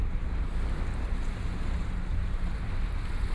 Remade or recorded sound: remade